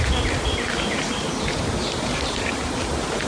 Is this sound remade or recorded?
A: recorded